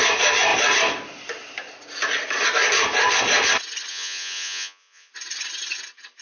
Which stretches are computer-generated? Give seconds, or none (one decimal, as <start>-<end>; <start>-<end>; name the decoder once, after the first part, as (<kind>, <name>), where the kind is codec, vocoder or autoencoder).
3.9-5.1 (vocoder, Vocos)